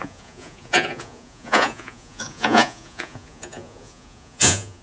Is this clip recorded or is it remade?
remade